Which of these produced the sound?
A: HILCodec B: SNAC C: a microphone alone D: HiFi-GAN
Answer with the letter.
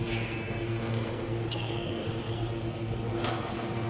B